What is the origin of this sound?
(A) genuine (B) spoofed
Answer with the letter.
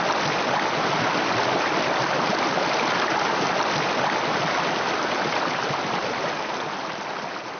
A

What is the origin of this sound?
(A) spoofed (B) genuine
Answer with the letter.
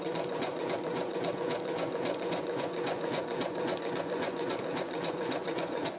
A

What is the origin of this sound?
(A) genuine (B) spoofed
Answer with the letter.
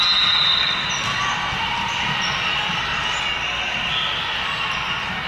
A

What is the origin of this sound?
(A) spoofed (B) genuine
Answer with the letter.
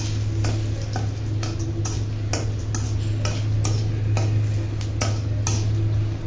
B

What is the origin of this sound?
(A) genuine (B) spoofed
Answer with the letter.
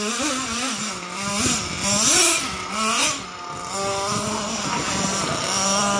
A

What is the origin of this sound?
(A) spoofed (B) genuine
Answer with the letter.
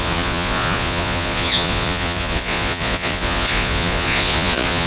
A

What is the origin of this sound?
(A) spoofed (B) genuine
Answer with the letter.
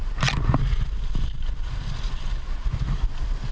B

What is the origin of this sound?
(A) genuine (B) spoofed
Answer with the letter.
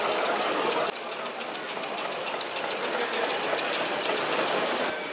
A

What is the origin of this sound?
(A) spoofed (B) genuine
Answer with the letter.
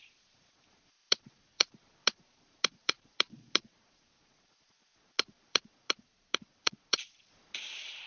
A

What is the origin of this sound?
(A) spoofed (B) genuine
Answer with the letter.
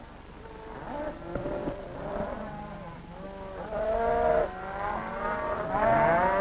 B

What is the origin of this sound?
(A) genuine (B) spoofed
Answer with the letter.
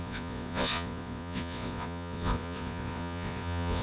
B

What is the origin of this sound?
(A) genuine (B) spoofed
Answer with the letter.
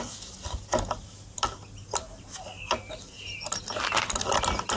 A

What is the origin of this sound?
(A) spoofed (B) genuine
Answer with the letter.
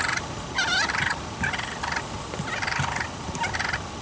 B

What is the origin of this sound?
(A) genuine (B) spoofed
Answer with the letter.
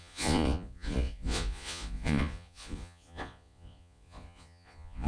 B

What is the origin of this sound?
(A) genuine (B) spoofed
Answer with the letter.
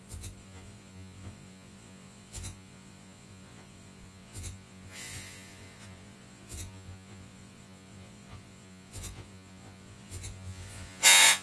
B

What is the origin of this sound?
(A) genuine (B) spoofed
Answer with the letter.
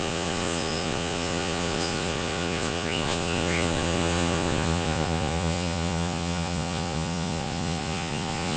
B